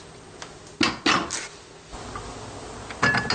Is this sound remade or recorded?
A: recorded